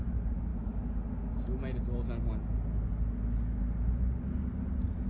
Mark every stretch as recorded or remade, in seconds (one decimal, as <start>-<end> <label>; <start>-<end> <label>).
0.0-5.1 recorded